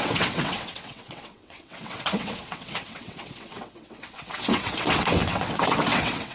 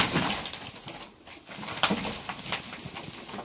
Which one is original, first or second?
second